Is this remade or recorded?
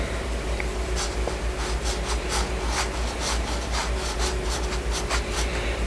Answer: recorded